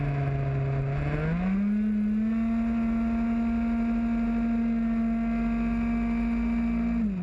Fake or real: real